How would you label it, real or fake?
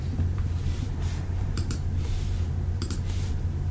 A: fake